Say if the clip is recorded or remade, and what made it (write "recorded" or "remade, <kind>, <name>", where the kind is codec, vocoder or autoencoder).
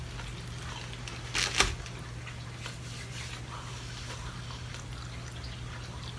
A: recorded